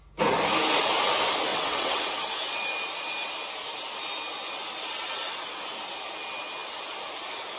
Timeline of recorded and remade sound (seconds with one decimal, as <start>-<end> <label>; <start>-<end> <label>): 0.0-1.5 recorded; 1.5-2.1 remade; 2.1-7.6 recorded